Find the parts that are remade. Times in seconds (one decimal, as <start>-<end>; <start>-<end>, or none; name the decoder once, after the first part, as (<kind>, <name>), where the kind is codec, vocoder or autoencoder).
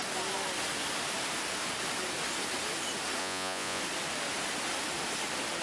3.2-3.8 (vocoder, Vocos)